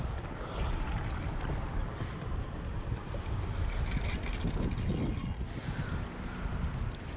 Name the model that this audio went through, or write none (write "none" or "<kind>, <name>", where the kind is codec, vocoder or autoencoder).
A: none